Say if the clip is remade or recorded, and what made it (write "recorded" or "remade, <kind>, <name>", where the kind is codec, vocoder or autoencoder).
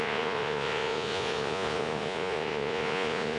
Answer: remade, vocoder, Vocos